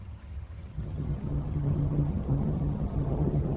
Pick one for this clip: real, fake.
fake